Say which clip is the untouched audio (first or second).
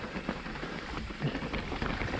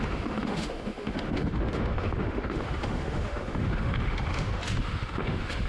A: first